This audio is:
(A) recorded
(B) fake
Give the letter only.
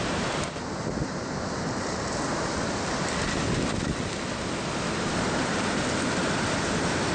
A